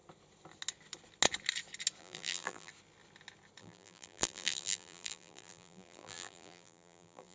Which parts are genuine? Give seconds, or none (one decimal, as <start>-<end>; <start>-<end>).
0.0-2.0; 2.7-3.6

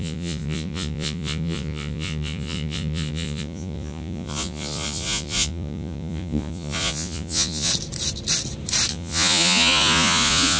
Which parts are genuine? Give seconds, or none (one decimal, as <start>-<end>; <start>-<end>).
7.7-8.9

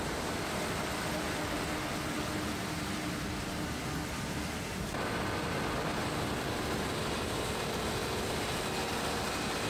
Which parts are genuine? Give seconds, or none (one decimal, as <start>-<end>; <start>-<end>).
0.0-9.7

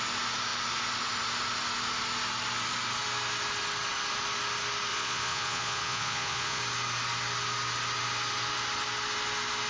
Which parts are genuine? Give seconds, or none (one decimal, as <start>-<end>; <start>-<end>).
0.0-4.9; 6.6-9.7